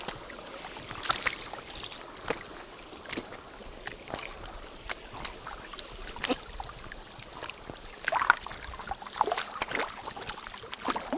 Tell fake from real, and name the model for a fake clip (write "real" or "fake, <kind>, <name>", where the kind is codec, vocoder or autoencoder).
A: real